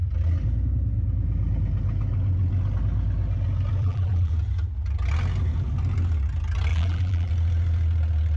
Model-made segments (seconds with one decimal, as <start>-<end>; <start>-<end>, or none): 3.8-4.3; 6.7-7.3